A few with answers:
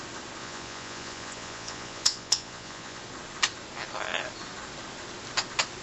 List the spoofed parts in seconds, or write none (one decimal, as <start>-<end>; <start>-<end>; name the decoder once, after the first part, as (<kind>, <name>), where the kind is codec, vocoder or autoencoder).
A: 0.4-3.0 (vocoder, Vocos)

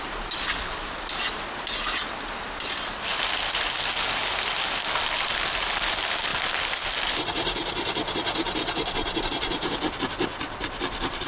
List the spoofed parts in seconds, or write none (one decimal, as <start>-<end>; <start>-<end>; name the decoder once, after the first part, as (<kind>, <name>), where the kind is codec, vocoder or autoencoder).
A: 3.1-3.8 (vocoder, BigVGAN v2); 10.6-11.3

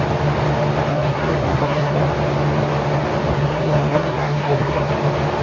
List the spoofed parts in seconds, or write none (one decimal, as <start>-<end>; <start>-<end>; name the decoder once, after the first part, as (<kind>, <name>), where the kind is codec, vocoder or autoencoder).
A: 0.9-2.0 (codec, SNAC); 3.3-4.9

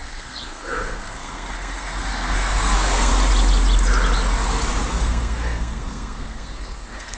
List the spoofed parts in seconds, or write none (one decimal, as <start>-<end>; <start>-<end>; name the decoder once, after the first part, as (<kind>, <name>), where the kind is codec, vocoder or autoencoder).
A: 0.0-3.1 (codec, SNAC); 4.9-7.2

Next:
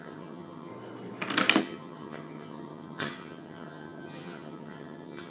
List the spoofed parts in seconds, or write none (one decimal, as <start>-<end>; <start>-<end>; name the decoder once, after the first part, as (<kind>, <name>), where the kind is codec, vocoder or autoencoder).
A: 0.0-0.7 (vocoder, HiFi-GAN); 1.6-5.3

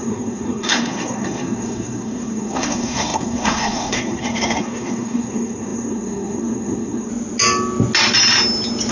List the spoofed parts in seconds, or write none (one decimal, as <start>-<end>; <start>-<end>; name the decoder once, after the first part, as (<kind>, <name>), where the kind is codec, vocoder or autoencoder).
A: 0.0-7.1 (codec, SNAC)

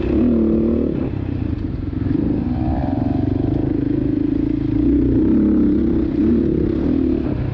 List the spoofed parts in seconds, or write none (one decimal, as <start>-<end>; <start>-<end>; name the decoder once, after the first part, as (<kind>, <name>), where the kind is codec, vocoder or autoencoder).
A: none